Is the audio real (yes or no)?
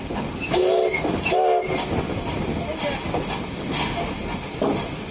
yes